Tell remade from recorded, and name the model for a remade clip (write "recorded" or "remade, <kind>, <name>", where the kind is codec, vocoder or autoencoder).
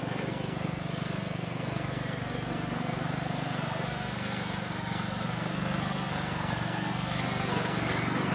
remade, codec, SNAC